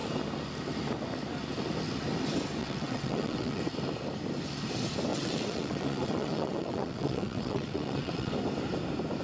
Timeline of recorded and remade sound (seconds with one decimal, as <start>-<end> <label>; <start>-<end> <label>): 0.0-2.6 recorded; 2.6-3.6 remade; 3.6-5.1 recorded; 5.1-8.3 remade; 8.3-9.2 recorded